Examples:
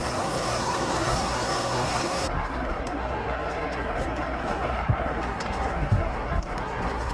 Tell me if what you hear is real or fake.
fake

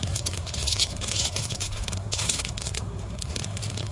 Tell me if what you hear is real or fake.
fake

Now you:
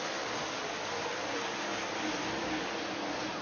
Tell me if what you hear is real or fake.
real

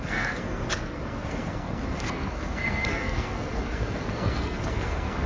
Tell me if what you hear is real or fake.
fake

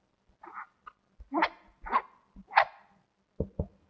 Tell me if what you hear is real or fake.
real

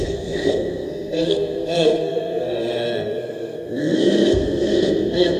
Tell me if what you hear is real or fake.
fake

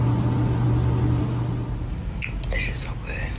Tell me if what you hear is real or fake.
real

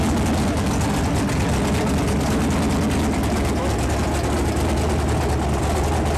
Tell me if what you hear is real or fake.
real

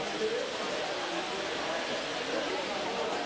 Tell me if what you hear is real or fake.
real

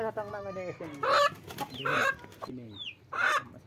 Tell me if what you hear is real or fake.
real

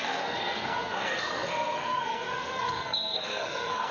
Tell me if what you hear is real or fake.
fake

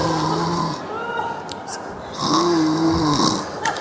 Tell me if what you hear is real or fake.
real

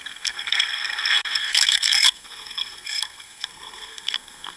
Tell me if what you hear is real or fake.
fake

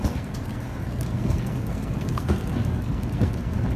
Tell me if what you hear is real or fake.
fake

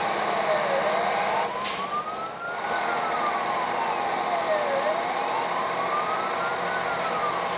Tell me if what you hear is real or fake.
real